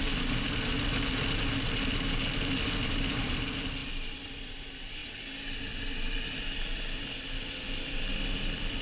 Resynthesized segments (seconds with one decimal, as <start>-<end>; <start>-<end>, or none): none